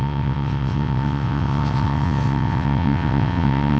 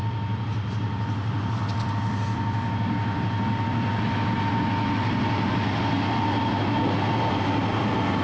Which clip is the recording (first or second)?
second